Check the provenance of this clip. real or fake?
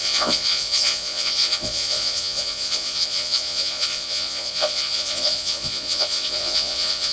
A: fake